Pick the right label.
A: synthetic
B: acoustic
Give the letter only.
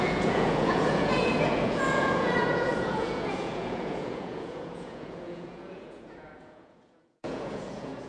A